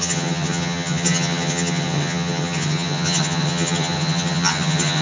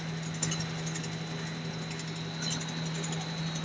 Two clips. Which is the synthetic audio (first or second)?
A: first